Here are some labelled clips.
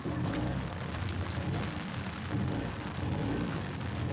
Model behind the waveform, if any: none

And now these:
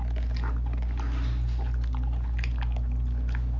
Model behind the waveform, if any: none